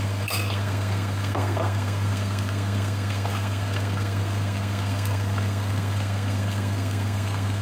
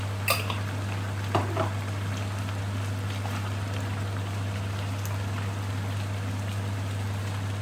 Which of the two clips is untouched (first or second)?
second